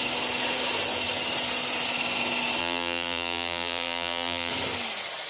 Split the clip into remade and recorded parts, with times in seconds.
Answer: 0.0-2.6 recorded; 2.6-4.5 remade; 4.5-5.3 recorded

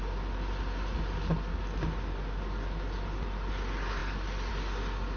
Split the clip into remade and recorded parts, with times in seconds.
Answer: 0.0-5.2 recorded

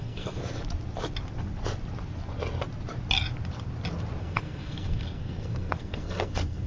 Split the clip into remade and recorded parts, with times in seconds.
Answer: 0.0-0.4 remade; 0.4-4.2 recorded; 4.2-6.7 remade

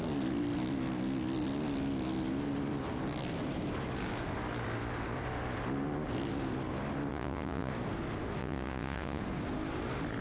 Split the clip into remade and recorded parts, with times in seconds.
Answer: 0.0-7.1 recorded; 7.1-7.7 remade; 7.7-8.4 recorded; 8.4-9.2 remade; 9.2-10.2 recorded

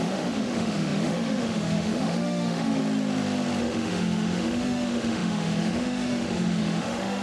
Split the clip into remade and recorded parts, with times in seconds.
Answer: 0.0-2.8 remade; 2.8-3.6 recorded; 3.6-7.2 remade

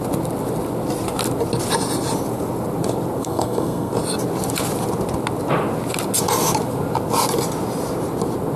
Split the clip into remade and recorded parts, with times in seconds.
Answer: 0.0-3.2 recorded; 3.2-3.9 remade; 3.9-8.6 recorded